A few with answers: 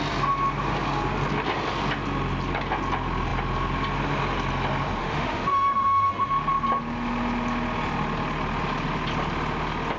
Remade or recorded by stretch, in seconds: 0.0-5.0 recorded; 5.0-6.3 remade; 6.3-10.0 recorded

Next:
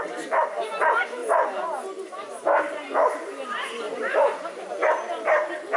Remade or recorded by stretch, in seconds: 0.0-5.8 recorded

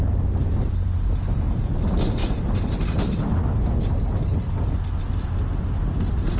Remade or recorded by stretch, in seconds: 0.0-6.4 recorded

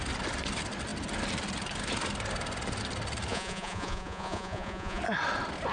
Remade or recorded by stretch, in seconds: 0.0-3.3 recorded; 3.3-5.0 remade; 5.0-5.7 recorded